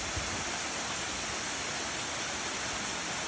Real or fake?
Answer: real